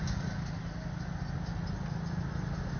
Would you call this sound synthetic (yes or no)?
no